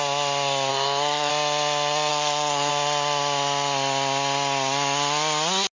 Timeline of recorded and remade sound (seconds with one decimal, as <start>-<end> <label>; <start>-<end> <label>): 0.0-0.7 recorded; 0.7-1.3 remade; 1.3-2.1 recorded; 2.1-2.7 remade; 2.7-5.7 recorded